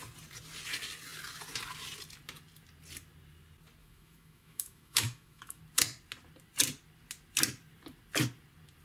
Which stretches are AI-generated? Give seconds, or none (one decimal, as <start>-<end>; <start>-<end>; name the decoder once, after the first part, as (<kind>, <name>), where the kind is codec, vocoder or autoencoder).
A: 3.8-5.6 (autoencoder, DAC-VAE)